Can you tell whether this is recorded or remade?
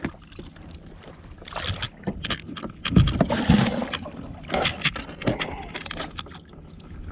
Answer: recorded